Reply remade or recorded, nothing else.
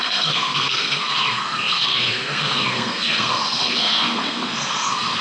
remade